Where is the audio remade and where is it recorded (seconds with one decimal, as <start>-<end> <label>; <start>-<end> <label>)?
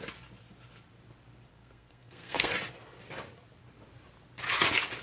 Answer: 0.0-1.5 recorded; 1.5-2.5 remade; 2.5-5.0 recorded